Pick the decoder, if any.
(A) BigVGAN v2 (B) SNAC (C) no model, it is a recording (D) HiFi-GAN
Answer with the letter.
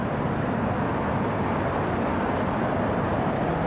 C